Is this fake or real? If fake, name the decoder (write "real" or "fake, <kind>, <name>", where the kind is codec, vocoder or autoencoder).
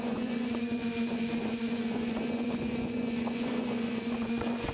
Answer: fake, vocoder, Vocos